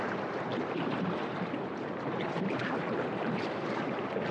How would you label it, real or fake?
real